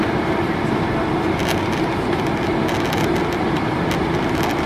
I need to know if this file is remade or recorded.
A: recorded